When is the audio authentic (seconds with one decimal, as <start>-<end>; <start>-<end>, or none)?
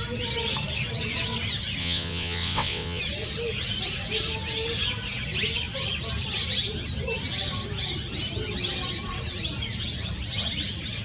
0.0-1.8; 3.0-11.0